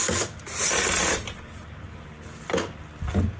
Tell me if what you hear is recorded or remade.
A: recorded